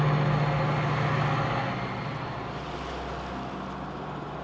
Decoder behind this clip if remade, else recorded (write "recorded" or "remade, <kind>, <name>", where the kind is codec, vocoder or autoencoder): recorded